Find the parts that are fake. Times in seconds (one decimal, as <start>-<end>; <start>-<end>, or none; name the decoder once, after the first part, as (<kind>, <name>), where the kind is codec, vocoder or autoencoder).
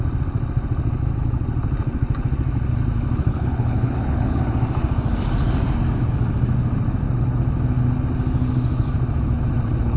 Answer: 3.3-4.4 (codec, HILCodec)